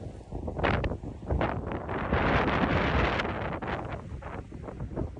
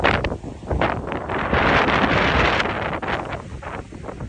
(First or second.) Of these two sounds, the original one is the first